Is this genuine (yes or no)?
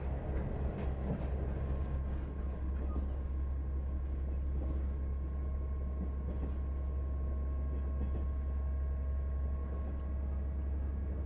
yes